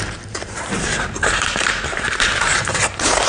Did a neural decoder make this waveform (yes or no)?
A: yes